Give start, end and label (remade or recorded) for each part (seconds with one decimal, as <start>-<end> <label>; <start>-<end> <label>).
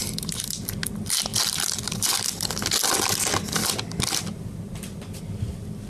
0.0-1.3 recorded; 1.3-2.5 remade; 2.5-3.6 recorded; 3.6-5.2 remade; 5.2-5.9 recorded